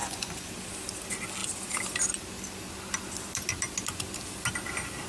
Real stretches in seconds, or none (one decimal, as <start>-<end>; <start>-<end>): 0.5-5.1

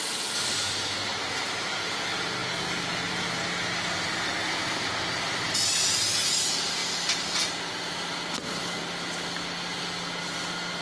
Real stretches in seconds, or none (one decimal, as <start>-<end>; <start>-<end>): 0.0-10.8

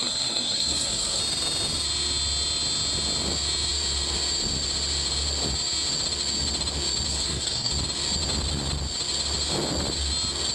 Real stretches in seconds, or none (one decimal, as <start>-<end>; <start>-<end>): 1.2-7.1; 7.7-10.5

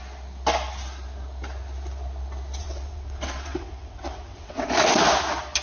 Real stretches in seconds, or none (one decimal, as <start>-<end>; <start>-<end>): 0.0-2.6; 4.7-5.6

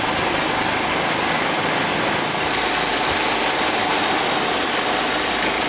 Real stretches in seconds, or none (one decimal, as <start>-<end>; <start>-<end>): 0.0-5.7

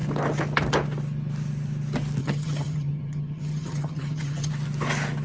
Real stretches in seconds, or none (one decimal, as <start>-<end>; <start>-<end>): 0.0-2.2; 4.5-5.2